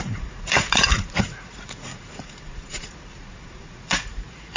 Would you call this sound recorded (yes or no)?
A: no